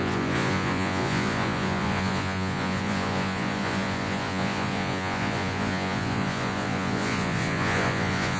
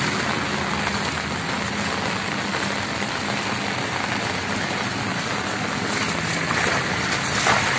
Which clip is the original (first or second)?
second